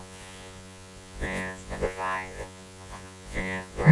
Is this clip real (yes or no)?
no